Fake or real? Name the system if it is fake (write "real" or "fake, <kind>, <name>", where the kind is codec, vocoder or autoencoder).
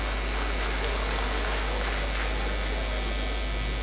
real